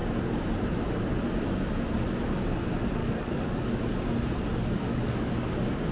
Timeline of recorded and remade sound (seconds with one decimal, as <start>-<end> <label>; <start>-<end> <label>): 0.0-3.0 recorded; 3.0-3.8 remade; 3.8-4.5 recorded; 4.5-5.5 remade; 5.5-5.9 recorded